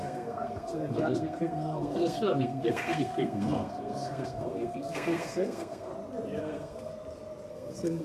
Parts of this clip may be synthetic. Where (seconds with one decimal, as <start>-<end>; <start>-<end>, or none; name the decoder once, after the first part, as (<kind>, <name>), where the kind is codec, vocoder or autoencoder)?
0.0-5.9 (codec, SNAC); 6.4-6.9; 7.5-8.0